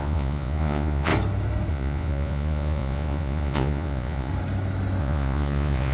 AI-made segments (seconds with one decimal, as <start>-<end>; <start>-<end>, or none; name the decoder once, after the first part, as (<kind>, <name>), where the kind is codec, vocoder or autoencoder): 0.0-1.1 (vocoder, Vocos); 1.7-4.3; 5.0-5.9